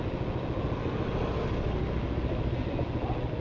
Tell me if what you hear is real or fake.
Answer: real